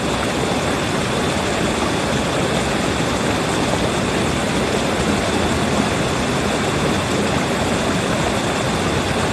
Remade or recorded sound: recorded